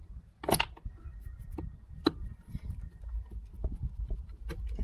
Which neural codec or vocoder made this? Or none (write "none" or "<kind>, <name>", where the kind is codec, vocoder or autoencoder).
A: none